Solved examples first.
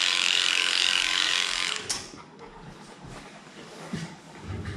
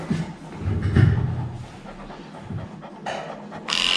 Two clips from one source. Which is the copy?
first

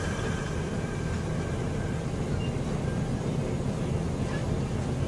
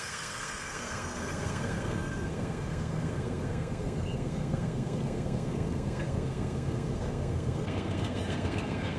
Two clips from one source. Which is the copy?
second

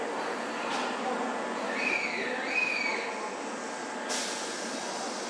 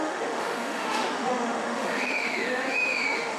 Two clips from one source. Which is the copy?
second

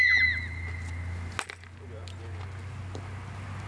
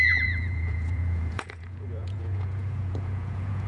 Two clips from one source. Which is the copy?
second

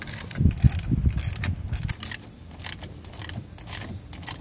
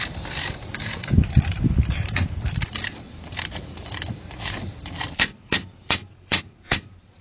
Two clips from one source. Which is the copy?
second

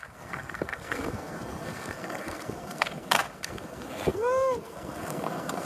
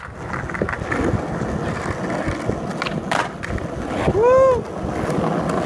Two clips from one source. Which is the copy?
first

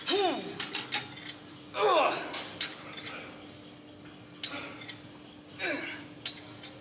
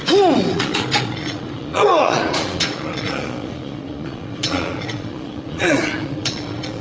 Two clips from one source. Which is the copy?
second